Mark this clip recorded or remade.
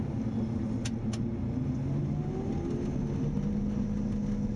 recorded